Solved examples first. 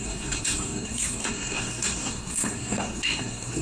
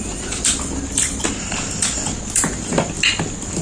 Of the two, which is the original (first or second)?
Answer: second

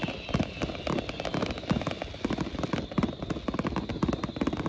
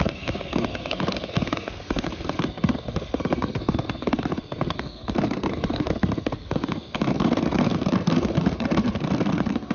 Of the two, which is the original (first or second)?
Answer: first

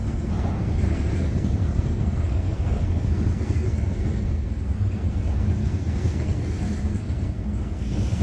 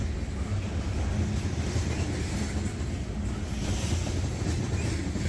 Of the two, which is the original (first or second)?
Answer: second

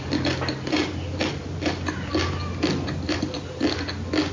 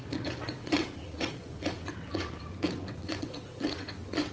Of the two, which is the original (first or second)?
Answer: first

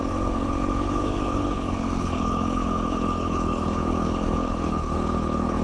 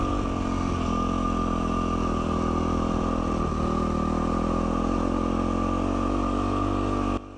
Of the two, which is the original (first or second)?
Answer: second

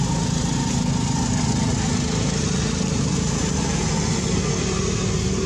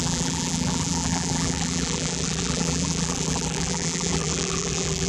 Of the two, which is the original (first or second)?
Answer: first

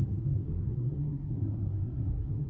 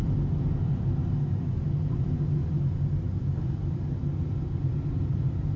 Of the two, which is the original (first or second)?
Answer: second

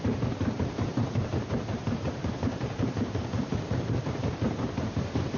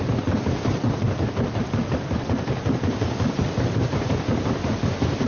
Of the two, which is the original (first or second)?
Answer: second